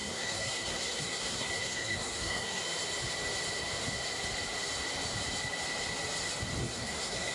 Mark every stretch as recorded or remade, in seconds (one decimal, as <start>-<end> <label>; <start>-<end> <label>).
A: 0.0-2.6 remade; 2.6-6.6 recorded; 6.6-7.3 remade